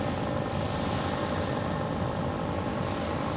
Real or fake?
real